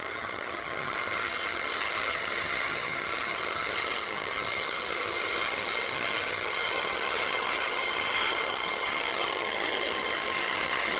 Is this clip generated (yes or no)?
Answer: yes